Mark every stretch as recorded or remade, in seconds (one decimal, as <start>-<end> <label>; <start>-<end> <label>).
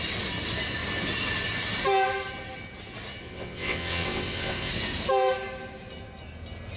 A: 0.0-3.2 recorded; 3.2-4.7 remade; 4.7-6.8 recorded